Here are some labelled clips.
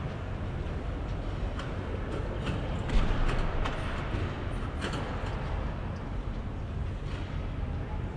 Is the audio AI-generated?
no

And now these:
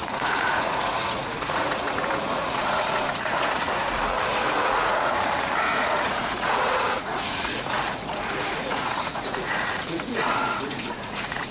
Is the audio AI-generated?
yes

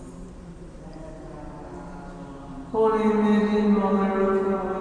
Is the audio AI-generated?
no